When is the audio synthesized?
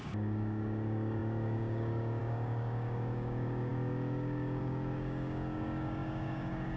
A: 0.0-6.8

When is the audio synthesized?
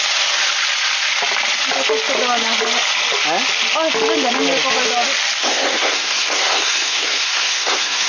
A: 5.4-8.1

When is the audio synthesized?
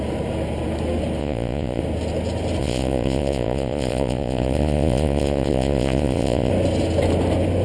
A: 1.2-1.8; 2.6-6.5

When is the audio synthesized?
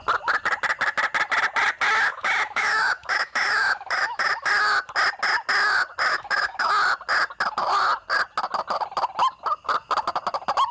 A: 2.1-4.5; 6.1-6.7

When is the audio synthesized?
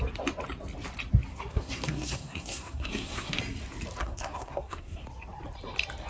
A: 1.3-3.4; 4.0-5.0